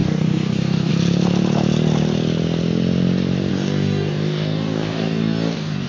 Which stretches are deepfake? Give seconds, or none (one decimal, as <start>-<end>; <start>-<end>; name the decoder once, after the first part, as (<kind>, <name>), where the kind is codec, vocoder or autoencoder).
0.0-0.9 (codec, DAC); 3.5-5.9